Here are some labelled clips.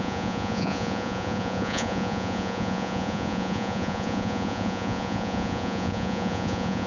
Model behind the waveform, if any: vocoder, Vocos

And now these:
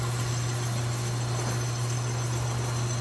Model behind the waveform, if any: none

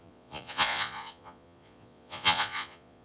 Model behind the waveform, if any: vocoder, Vocos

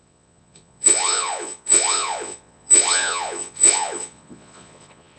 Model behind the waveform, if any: vocoder, Vocos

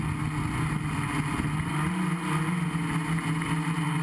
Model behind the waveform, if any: none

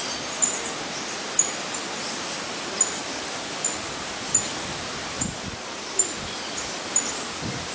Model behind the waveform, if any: none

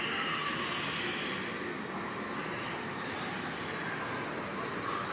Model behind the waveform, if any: none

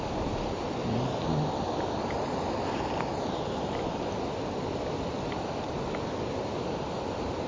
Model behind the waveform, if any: none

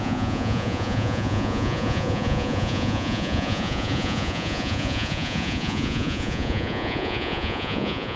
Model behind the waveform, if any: vocoder, Vocos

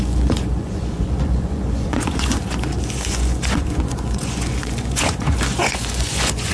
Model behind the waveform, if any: vocoder, Vocos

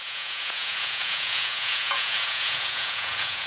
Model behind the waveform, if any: vocoder, Vocos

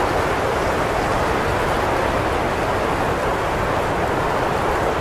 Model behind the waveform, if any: none